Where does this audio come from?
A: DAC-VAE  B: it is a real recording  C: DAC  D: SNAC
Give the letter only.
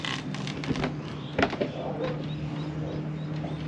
B